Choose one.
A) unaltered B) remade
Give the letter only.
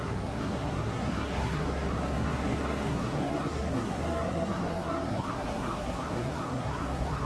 B